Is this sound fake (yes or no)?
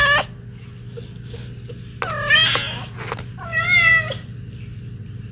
no